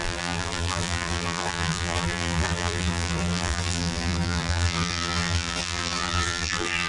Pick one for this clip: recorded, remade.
remade